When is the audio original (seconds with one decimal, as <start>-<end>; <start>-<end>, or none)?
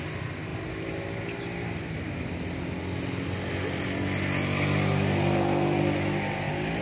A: 0.0-6.8